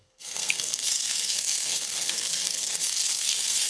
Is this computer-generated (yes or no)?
yes